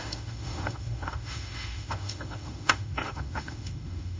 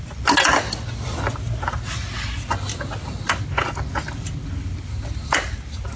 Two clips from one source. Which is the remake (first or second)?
first